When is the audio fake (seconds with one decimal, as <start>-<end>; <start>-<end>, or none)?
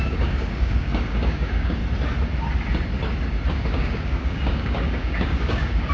0.0-1.8; 3.5-5.9